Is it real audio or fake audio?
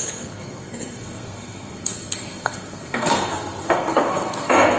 fake